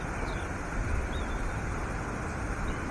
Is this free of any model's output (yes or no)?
no